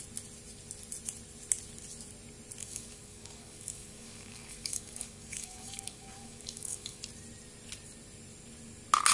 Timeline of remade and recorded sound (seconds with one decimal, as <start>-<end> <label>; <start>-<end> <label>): 0.0-2.6 recorded; 2.6-7.0 remade; 7.0-9.1 recorded